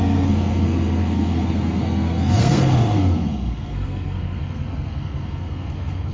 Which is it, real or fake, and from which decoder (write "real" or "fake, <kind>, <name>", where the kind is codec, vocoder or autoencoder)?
fake, codec, SNAC